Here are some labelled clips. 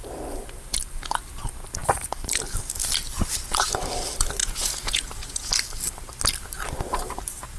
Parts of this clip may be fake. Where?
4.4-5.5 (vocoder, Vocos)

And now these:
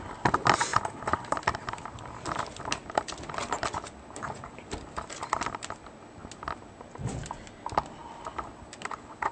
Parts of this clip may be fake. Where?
0.7-2.4 (vocoder, BigVGAN v2)

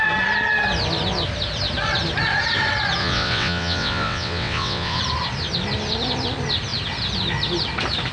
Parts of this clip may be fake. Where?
3.0-5.0 (vocoder, WaveNeXt)

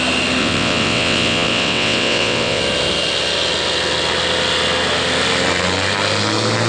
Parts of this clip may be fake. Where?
0.4-2.6 (vocoder, WaveNeXt)

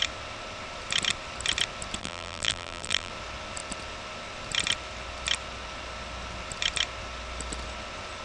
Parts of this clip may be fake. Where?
2.0-3.1 (vocoder, BigVGAN v2)